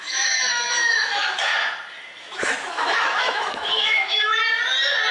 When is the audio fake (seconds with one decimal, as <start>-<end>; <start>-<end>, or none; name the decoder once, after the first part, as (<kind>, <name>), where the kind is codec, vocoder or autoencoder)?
0.0-1.5 (autoencoder, DAC-VAE); 2.2-4.4